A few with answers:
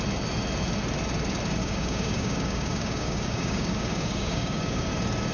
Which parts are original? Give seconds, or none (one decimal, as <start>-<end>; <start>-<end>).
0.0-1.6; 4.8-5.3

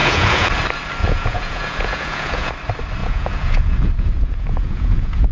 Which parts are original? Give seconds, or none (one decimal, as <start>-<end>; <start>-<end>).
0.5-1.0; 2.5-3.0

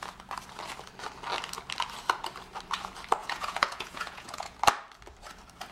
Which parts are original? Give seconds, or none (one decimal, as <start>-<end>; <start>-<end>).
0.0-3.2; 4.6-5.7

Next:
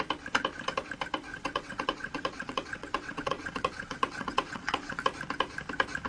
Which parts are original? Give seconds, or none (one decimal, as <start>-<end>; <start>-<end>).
0.0-1.3; 5.0-6.1

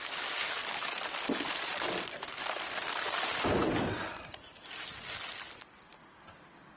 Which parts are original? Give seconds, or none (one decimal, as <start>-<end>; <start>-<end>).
0.6-4.7

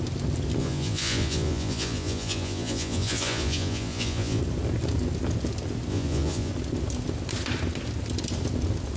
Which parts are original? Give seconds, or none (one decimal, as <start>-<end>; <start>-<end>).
0.0-0.6; 4.4-5.9; 6.5-9.0